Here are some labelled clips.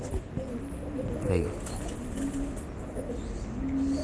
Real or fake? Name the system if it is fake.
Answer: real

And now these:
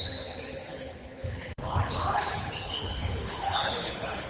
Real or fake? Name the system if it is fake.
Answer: fake, codec, HILCodec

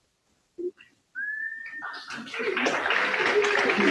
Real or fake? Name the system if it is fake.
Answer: real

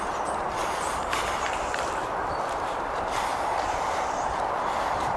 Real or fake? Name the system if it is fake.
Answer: real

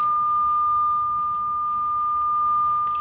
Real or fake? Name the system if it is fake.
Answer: real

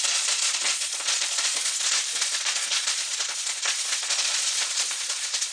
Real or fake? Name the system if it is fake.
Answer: fake, vocoder, Vocos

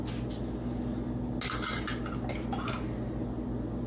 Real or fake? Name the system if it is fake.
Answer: real